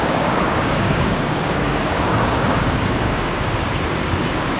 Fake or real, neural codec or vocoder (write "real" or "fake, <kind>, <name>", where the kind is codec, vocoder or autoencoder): fake, codec, DAC